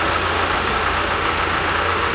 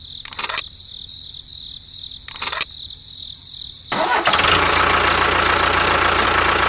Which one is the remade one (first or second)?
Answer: first